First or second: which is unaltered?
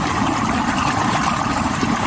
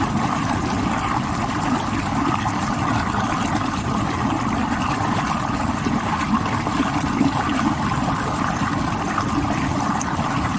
second